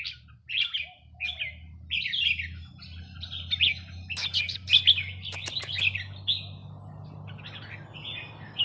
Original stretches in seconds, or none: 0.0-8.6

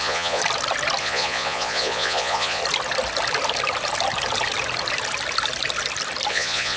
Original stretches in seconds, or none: 0.4-1.0; 2.6-6.3

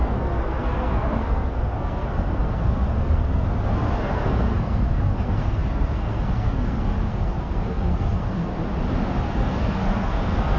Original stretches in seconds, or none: 8.5-9.2

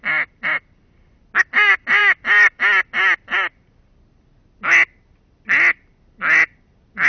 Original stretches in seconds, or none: 0.0-7.1

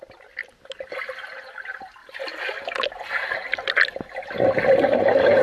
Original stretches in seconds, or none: 0.0-5.4

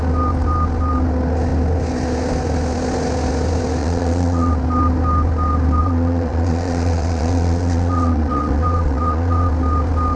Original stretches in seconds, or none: 0.0-3.8; 4.5-5.8; 9.5-10.2